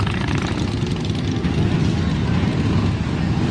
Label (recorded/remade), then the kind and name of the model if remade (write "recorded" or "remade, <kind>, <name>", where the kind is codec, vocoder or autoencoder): recorded